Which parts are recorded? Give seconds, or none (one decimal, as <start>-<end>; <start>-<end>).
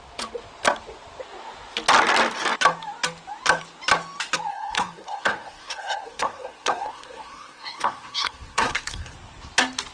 0.0-4.5; 9.1-9.9